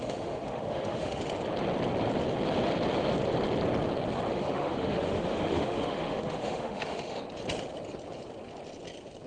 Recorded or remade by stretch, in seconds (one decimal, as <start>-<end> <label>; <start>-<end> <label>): 0.0-1.2 remade; 1.2-4.3 recorded; 4.3-7.2 remade; 7.2-9.3 recorded